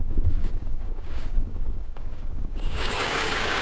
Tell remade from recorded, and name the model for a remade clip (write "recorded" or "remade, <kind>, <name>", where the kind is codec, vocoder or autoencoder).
remade, codec, DAC